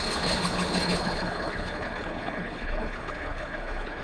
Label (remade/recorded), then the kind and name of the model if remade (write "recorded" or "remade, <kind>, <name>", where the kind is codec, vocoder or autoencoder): remade, codec, HILCodec